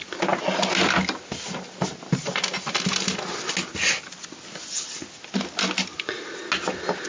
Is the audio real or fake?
real